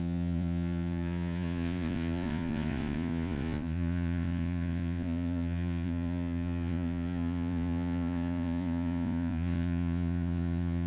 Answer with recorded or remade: remade